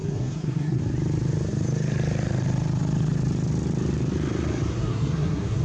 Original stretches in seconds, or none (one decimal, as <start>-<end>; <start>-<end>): 0.8-4.7